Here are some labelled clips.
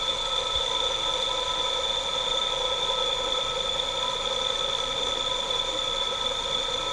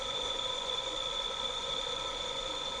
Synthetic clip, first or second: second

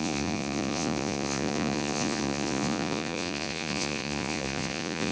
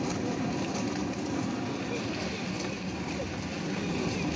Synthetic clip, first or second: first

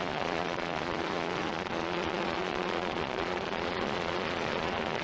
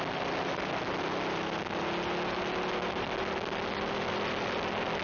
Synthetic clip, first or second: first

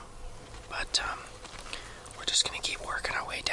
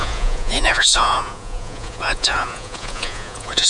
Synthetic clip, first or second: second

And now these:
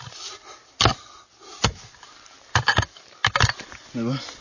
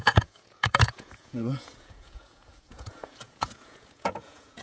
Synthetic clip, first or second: second